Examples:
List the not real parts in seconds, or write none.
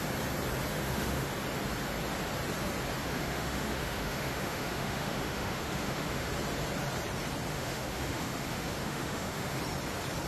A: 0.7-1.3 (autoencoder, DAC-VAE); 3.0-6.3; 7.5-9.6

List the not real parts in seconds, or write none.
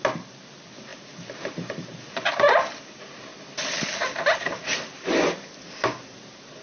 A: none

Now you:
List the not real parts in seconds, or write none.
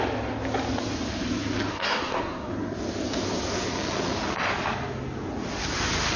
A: 1.7-2.5 (codec, SNAC)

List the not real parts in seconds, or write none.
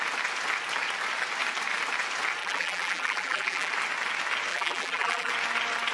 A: 2.4-3.7 (vocoder, BigVGAN v2); 4.5-5.3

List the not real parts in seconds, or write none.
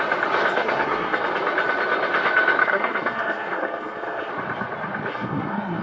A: 0.5-1.2 (codec, SNAC); 2.6-4.3; 5.1-5.8